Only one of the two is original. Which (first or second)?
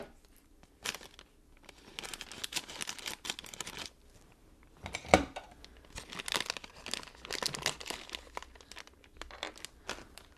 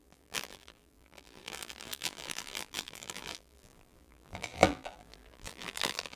first